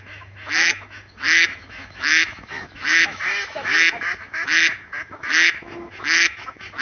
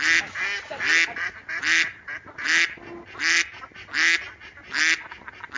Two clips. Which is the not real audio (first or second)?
first